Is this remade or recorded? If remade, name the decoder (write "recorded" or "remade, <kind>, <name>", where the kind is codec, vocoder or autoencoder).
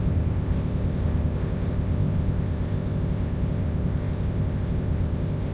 remade, codec, ZipCodec